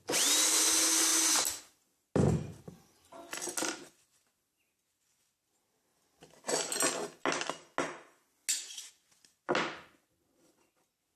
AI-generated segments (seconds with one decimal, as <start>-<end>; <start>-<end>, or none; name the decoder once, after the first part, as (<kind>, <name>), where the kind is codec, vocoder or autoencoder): none